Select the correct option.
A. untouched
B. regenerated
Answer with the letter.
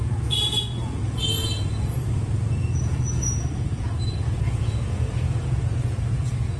B